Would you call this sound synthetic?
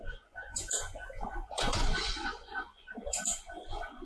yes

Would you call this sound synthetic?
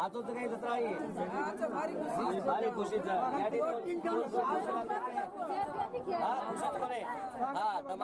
no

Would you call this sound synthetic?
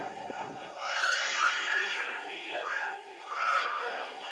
yes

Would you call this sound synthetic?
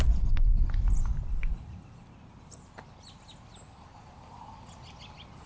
no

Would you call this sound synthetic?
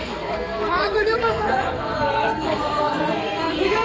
yes